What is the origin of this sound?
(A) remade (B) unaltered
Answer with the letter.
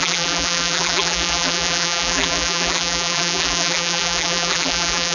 A